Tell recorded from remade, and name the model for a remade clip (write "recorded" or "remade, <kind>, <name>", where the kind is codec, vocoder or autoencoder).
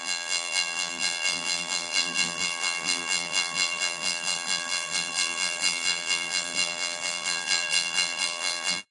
remade, vocoder, BigVGAN v2